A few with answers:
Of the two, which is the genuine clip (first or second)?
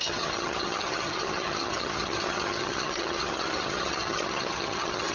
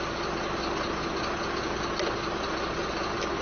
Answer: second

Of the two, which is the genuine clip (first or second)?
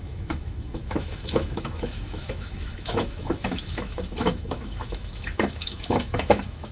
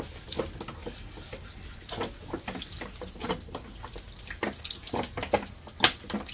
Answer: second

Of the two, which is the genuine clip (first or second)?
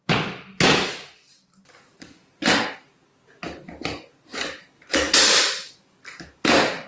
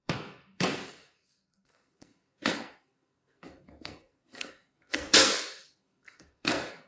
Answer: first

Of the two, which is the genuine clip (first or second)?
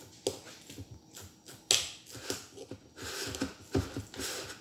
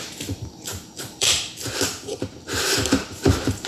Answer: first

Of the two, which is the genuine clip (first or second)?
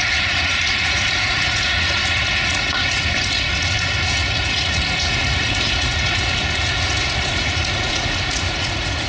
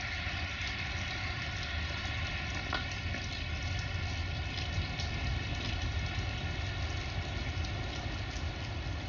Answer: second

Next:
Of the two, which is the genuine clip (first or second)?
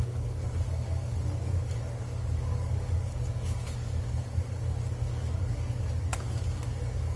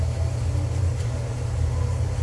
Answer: second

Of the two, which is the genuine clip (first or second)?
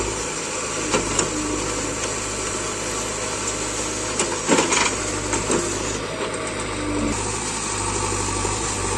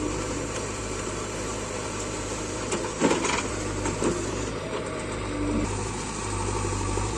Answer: first